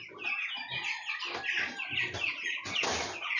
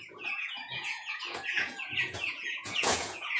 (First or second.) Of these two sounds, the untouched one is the first